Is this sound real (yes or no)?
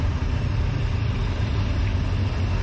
yes